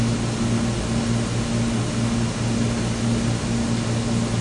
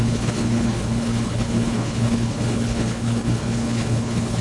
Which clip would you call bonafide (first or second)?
first